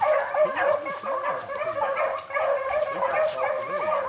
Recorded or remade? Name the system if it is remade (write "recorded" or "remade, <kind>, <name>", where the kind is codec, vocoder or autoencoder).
recorded